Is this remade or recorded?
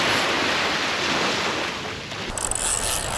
recorded